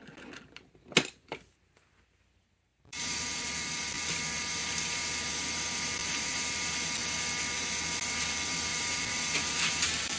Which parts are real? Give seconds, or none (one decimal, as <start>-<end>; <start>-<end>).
0.0-2.7; 6.7-8.7

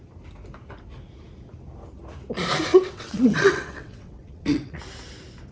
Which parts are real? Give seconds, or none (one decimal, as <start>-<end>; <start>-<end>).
0.0-2.7; 4.8-5.5

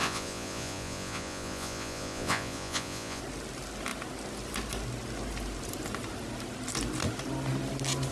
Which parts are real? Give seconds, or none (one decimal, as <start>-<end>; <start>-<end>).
3.2-8.1

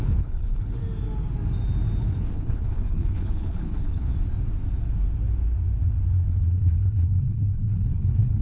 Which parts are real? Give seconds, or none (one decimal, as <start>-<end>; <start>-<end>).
0.8-2.0; 4.1-6.3

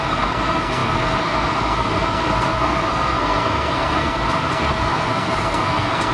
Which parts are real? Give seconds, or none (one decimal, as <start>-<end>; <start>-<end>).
none

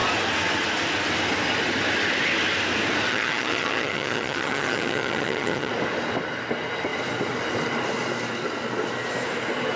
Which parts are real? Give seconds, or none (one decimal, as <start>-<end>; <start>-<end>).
0.0-3.1; 5.7-9.8

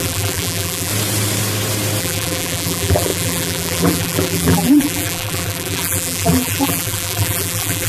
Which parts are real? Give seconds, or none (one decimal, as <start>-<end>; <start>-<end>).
0.9-2.0